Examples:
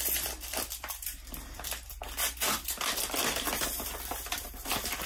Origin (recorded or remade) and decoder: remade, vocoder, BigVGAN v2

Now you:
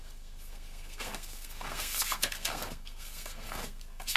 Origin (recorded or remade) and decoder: remade, codec, SNAC